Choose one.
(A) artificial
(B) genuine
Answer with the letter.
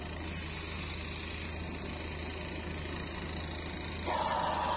B